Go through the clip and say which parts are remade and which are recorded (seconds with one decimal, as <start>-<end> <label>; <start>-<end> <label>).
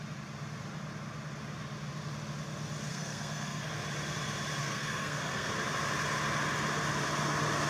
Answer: 0.0-2.9 recorded; 2.9-3.7 remade; 3.7-4.6 recorded; 4.6-5.5 remade; 5.5-7.7 recorded